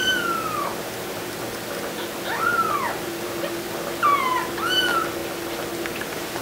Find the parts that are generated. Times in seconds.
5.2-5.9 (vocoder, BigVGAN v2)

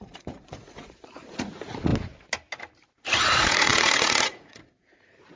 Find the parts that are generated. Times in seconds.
0.0-1.9 (vocoder, Vocos); 3.2-5.4

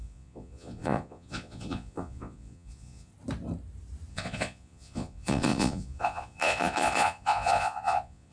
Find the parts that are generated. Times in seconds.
0.0-3.1 (vocoder, Vocos); 4.1-8.3

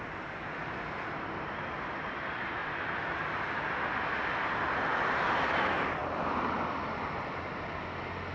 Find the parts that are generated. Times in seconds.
6.0-7.3 (vocoder, BigVGAN v2)

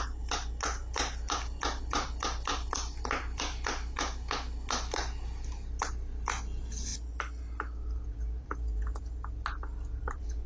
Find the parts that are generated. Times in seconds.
none

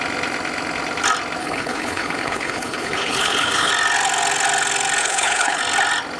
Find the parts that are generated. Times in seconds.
1.4-3.7 (codec, HILCodec); 5.0-5.6